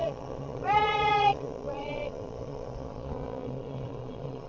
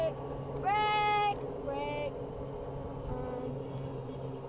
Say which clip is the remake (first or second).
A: first